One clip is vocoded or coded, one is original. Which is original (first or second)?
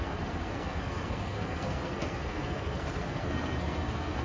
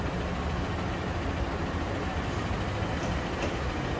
second